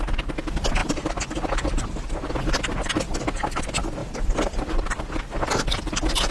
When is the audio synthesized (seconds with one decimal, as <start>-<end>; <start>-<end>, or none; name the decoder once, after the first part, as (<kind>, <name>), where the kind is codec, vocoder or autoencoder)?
4.0-6.3 (vocoder, BigVGAN v2)